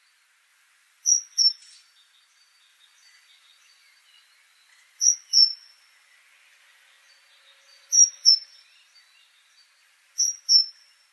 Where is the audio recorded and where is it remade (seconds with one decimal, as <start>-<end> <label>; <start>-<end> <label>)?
0.0-0.5 recorded; 0.5-1.4 remade; 1.4-2.7 recorded; 2.7-7.1 remade; 7.1-7.7 recorded; 7.7-8.3 remade; 8.3-9.8 recorded; 9.8-10.4 remade; 10.4-11.1 recorded